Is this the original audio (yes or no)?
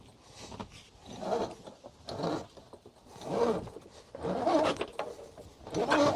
yes